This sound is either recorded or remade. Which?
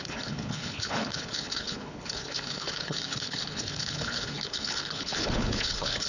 remade